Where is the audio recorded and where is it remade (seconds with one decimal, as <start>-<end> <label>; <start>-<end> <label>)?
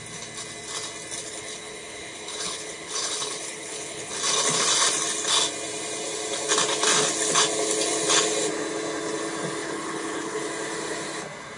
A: 0.0-1.2 recorded; 1.2-4.1 remade; 4.1-9.6 recorded; 9.6-10.4 remade; 10.4-11.6 recorded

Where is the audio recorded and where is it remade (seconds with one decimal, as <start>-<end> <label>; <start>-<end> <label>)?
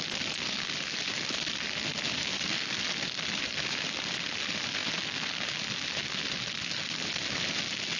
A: 0.0-8.0 recorded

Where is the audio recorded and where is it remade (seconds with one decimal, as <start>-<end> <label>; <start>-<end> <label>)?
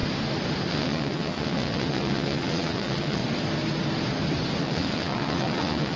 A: 0.0-0.7 recorded; 0.7-3.2 remade; 3.2-4.6 recorded; 4.6-6.0 remade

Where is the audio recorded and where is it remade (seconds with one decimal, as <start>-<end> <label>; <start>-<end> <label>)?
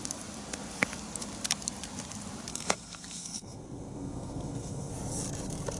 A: 0.0-2.5 recorded; 2.5-4.9 remade; 4.9-5.8 recorded